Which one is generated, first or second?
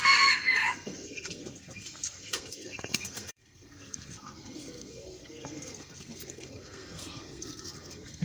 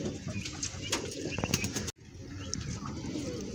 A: first